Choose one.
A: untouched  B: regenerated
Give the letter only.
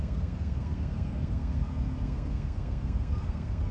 B